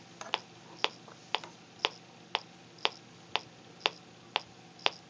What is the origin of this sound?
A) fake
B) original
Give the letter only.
B